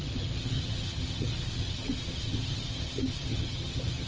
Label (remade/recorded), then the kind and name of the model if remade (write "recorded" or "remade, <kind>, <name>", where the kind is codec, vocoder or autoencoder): remade, vocoder, HiFi-GAN